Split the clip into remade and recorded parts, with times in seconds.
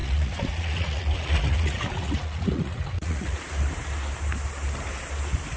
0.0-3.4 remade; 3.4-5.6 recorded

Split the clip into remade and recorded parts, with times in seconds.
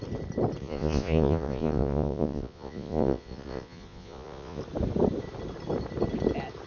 0.0-0.6 recorded; 0.6-4.6 remade; 4.6-6.7 recorded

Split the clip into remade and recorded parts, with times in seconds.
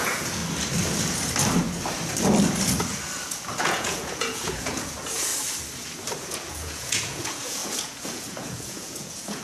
0.0-0.4 remade; 0.4-3.6 recorded; 3.6-5.3 remade; 5.3-6.2 recorded; 6.2-9.4 remade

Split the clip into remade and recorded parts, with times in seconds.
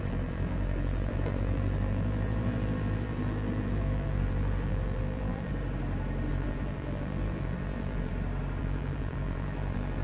0.0-5.5 remade; 5.5-6.3 recorded; 6.3-8.1 remade; 8.1-8.6 recorded; 8.6-10.0 remade